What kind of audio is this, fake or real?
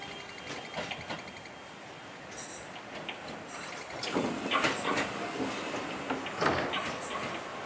real